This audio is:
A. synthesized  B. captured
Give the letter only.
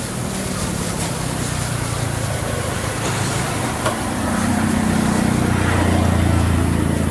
B